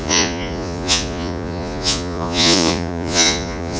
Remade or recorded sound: remade